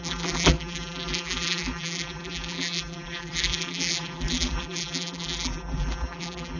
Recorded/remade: remade